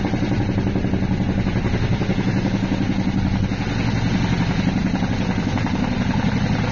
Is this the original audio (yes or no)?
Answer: yes